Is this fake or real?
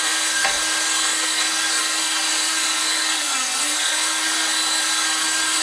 fake